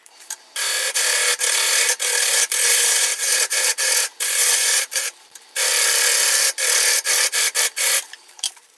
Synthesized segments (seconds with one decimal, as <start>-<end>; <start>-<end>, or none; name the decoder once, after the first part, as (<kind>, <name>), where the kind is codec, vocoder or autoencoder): 0.0-5.7 (vocoder, BigVGAN v2); 7.6-8.8